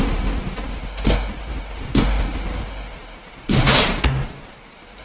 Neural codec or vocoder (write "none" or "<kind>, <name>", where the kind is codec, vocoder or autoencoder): none